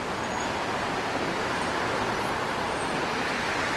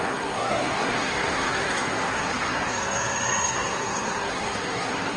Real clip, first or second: first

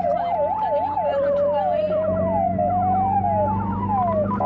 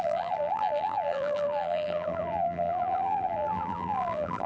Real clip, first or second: first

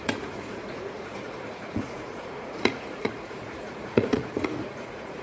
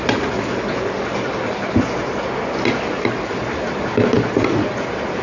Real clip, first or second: second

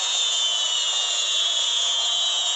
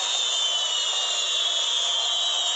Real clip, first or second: second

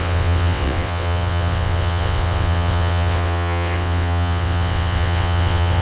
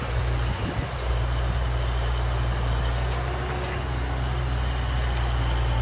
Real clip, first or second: second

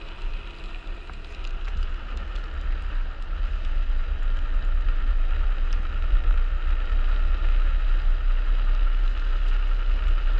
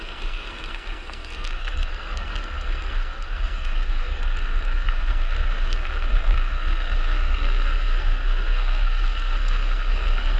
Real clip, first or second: first